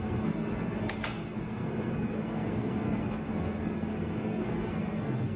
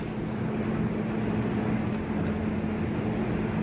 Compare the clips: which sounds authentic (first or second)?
second